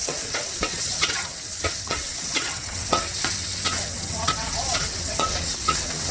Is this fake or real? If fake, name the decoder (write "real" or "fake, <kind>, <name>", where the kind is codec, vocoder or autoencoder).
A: fake, vocoder, WaveNeXt